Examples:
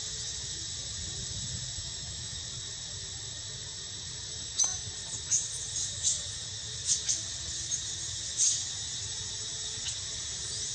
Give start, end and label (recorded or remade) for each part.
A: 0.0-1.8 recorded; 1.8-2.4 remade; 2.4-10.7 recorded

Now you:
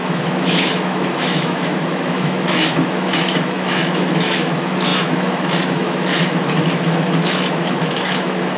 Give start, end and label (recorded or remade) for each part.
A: 0.0-8.6 remade